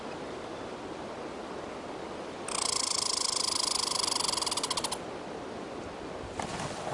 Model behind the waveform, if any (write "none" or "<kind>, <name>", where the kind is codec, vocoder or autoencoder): none